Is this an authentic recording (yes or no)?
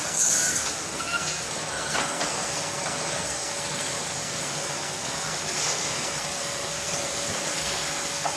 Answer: no